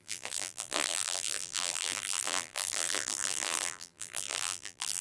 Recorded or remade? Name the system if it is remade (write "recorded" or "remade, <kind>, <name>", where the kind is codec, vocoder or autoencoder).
remade, vocoder, BigVGAN v2